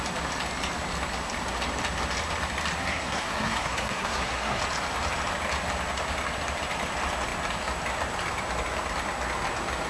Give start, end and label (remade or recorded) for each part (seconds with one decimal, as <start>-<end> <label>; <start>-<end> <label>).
0.0-2.8 recorded; 2.8-4.6 remade; 4.6-9.9 recorded

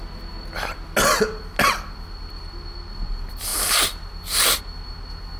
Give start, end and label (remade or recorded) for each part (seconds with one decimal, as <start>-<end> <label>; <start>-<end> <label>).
0.0-5.4 recorded

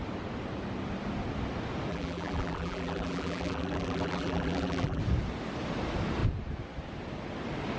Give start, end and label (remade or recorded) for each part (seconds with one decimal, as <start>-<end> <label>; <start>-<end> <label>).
0.0-1.9 recorded; 1.9-5.0 remade; 5.0-7.8 recorded

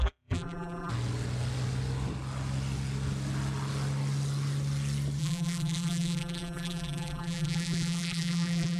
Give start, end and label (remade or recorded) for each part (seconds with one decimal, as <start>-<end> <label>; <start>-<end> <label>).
0.0-0.9 remade; 0.9-5.2 recorded; 5.2-8.8 remade

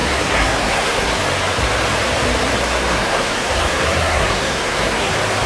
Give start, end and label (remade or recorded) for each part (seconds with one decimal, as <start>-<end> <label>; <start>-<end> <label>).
0.0-1.2 remade; 1.2-2.6 recorded; 2.6-5.1 remade; 5.1-5.5 recorded

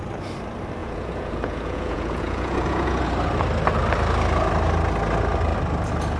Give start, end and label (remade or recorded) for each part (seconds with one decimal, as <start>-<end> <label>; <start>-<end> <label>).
0.0-0.8 recorded; 0.8-3.0 remade; 3.0-6.2 recorded

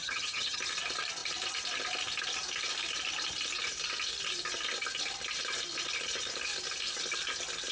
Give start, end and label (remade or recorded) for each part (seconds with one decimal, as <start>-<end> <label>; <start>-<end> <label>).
0.0-0.6 remade; 0.6-7.7 recorded